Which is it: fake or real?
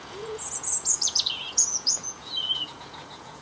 fake